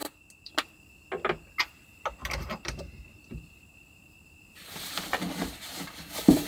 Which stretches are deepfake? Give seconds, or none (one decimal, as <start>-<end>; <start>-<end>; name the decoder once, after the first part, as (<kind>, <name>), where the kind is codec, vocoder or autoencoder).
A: 0.0-0.5 (vocoder, BigVGAN v2); 2.2-6.1